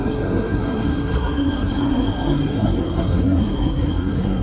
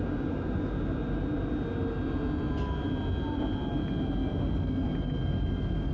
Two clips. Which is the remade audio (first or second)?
first